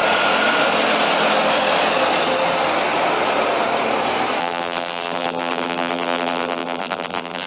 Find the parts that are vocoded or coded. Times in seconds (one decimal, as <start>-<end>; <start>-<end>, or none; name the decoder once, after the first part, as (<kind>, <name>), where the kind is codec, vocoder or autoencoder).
4.4-7.5 (vocoder, BigVGAN v2)